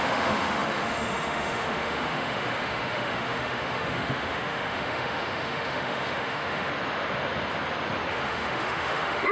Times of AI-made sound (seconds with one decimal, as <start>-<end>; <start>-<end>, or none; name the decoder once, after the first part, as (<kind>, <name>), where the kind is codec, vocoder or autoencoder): 0.0-6.7 (autoencoder, DAC-VAE); 8.1-9.3